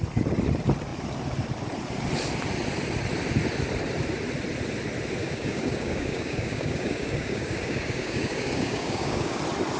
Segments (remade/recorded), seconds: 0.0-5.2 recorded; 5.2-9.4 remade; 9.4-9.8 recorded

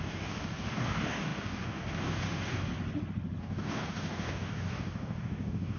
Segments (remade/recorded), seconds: 0.0-2.7 remade; 2.7-3.4 recorded; 3.4-5.8 remade

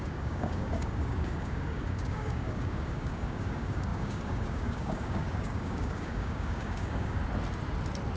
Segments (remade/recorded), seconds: 0.0-7.2 remade; 7.2-8.2 recorded

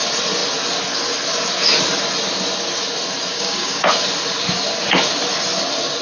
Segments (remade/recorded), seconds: 0.0-3.3 recorded; 3.3-3.9 remade; 3.9-6.0 recorded

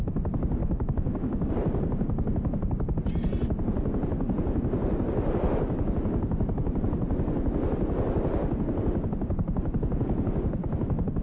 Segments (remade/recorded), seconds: 0.0-0.6 recorded; 0.6-1.5 remade; 1.5-11.2 recorded

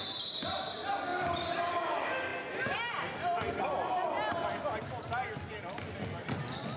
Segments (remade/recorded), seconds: 0.0-6.8 recorded

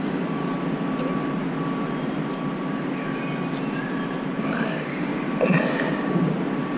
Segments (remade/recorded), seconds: 0.0-0.4 remade; 0.4-4.4 recorded; 4.4-5.1 remade; 5.1-6.8 recorded